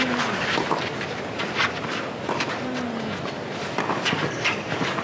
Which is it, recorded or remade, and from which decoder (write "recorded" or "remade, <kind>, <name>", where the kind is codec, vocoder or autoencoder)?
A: recorded